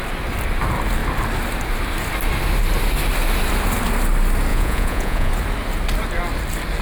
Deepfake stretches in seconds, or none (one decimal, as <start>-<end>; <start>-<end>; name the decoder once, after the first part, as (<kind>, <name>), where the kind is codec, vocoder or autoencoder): 4.5-5.3 (vocoder, Vocos)